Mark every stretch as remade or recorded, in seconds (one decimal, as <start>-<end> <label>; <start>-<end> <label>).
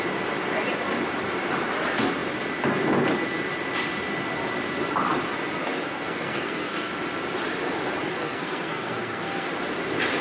0.0-5.6 recorded; 5.6-6.9 remade; 6.9-8.2 recorded; 8.2-9.5 remade; 9.5-10.2 recorded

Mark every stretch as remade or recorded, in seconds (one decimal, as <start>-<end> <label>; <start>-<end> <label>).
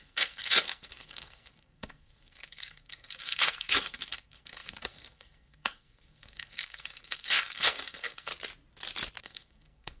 0.0-8.3 remade; 8.3-9.2 recorded; 9.2-10.0 remade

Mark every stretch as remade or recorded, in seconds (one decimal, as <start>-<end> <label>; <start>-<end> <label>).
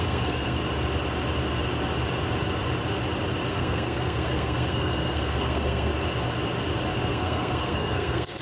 0.0-0.6 remade; 0.6-3.5 recorded; 3.5-5.9 remade; 5.9-7.1 recorded; 7.1-8.4 remade